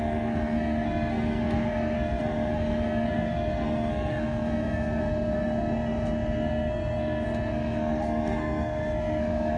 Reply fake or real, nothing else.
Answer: fake